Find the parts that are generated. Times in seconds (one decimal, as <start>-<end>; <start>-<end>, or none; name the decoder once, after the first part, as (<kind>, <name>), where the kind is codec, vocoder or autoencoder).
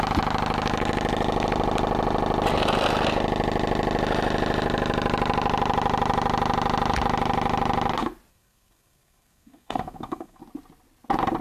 8.3-10.4 (codec, SNAC)